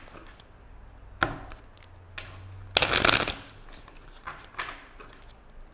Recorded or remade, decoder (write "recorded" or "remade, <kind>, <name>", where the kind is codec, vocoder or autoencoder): recorded